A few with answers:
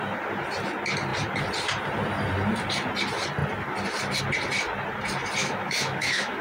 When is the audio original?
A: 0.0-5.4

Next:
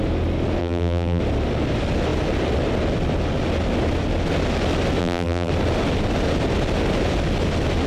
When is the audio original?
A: 0.0-0.6; 1.2-5.0; 5.5-7.9

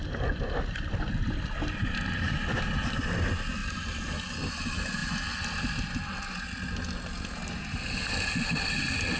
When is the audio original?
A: 0.0-9.2

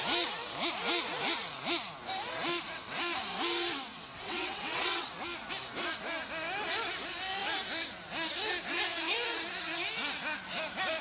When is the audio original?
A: 0.0-3.9; 5.1-11.0

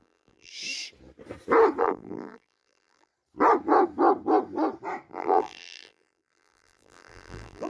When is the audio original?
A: 0.5-1.8; 3.1-5.1

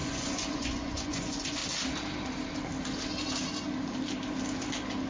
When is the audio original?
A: 1.6-5.1